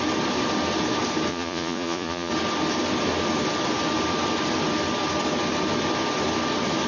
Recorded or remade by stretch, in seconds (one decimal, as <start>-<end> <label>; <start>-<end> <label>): 0.0-1.3 recorded; 1.3-2.3 remade; 2.3-6.9 recorded